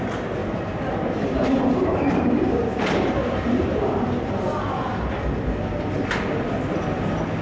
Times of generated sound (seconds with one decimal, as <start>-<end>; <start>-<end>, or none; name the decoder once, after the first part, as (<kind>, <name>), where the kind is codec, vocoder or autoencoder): 0.4-4.3 (vocoder, BigVGAN v2)